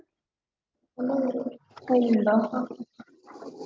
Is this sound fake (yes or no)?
no